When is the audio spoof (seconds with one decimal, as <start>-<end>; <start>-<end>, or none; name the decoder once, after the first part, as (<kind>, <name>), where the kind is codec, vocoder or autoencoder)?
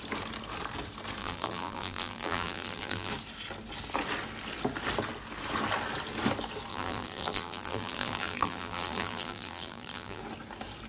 1.2-3.1 (vocoder, BigVGAN v2); 6.7-10.2